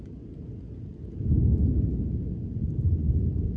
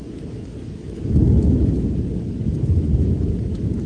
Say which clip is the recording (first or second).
first